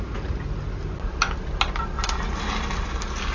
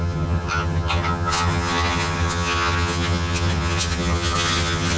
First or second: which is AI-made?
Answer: second